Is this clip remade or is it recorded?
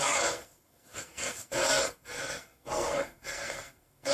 remade